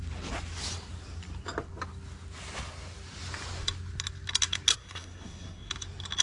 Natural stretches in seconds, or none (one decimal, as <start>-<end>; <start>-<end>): 0.0-4.7; 5.7-6.2